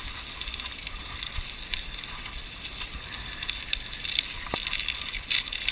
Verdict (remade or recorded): recorded